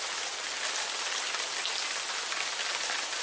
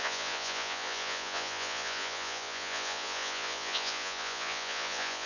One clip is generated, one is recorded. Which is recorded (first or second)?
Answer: first